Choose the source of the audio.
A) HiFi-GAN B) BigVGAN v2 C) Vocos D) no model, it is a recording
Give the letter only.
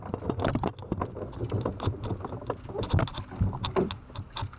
D